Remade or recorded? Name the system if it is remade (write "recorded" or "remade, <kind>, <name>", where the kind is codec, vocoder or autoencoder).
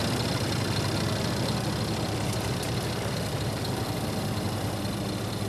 recorded